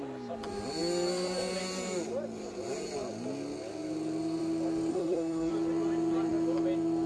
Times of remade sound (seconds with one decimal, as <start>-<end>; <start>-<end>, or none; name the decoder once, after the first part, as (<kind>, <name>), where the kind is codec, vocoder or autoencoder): 4.9-5.5 (codec, SNAC)